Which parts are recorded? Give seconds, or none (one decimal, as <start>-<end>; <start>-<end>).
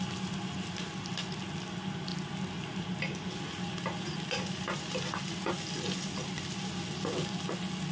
0.0-7.9